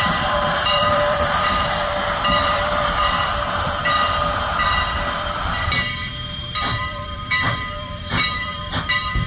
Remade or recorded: remade